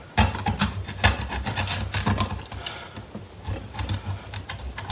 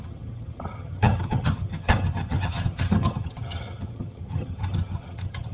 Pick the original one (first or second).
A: first